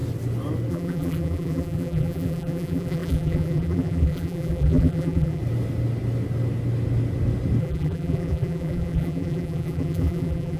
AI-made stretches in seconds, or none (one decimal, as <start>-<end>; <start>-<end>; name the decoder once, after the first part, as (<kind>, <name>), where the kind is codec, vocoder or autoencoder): 0.7-5.4 (vocoder, BigVGAN v2); 7.6-10.6